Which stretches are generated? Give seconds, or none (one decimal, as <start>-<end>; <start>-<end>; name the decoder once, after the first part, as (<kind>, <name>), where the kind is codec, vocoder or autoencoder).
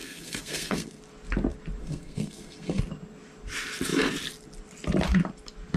0.0-1.0 (codec, SNAC); 1.8-2.8